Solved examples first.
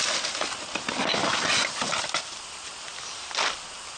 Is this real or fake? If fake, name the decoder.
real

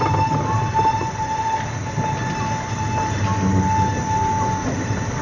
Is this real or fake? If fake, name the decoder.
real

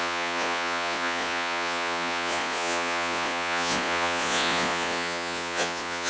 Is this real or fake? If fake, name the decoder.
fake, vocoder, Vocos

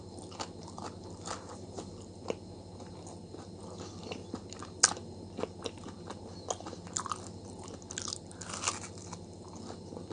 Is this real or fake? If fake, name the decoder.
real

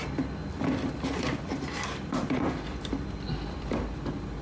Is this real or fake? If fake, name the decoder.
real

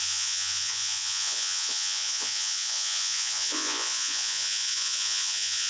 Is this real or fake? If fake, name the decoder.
fake, vocoder, Vocos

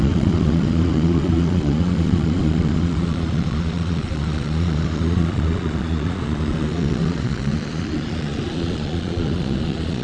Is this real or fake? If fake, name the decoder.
fake, vocoder, Vocos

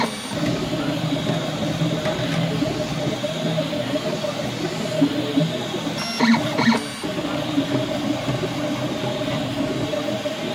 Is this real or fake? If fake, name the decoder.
real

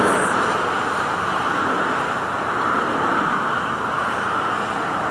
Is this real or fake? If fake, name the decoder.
real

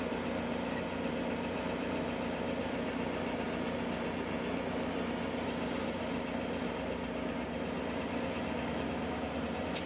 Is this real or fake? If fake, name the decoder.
real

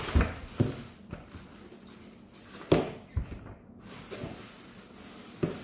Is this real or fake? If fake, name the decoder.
real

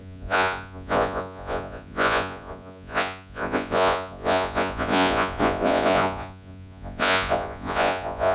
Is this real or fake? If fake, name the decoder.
fake, vocoder, Vocos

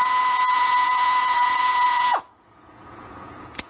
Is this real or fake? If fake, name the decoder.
fake, vocoder, Vocos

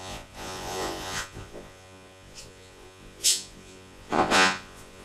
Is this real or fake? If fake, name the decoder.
fake, vocoder, Vocos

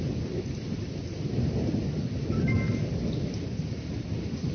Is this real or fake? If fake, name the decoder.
real